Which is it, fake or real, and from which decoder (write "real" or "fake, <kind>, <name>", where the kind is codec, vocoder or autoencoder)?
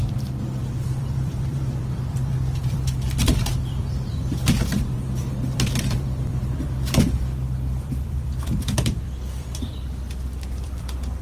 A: fake, vocoder, BigVGAN v2